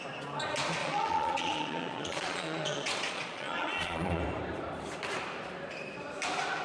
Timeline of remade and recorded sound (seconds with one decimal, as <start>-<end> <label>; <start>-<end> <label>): 0.0-0.8 recorded; 0.8-4.2 remade; 4.2-6.6 recorded